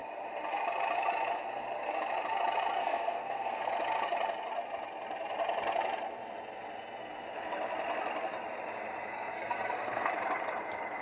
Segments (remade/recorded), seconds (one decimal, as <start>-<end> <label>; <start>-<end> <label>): 0.0-2.8 recorded; 2.8-3.6 remade; 3.6-9.1 recorded; 9.1-10.1 remade; 10.1-11.0 recorded